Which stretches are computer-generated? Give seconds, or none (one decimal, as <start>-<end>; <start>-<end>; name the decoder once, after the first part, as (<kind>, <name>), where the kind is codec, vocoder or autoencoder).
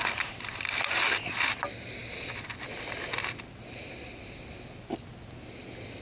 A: none